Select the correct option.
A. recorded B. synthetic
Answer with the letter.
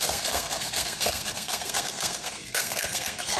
B